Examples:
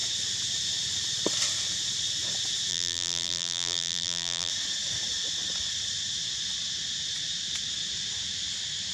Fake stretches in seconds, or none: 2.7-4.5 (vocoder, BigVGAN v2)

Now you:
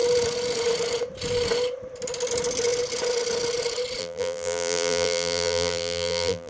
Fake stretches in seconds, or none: 4.0-6.5 (vocoder, BigVGAN v2)